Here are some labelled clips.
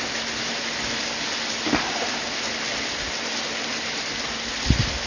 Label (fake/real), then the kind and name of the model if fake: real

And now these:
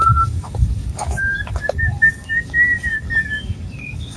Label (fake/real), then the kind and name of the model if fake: fake, codec, DAC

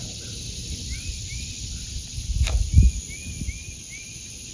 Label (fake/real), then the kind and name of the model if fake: real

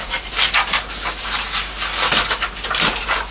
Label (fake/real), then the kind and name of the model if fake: real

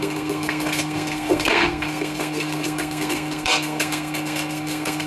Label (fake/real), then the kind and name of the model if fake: fake, codec, SNAC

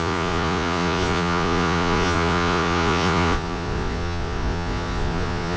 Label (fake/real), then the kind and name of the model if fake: fake, vocoder, Vocos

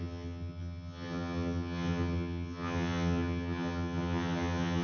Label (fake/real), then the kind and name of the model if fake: fake, vocoder, HiFi-GAN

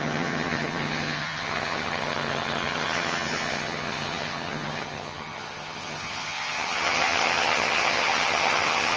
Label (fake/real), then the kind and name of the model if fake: fake, vocoder, HiFi-GAN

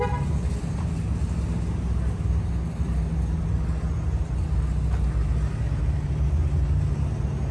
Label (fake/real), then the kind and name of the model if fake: real